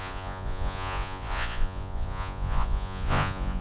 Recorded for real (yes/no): no